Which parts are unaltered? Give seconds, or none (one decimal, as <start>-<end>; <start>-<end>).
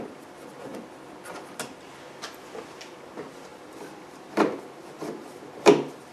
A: 0.0-3.5; 4.6-6.1